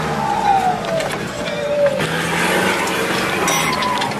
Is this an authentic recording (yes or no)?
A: yes